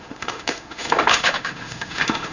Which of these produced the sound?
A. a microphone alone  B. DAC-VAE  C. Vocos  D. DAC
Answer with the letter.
B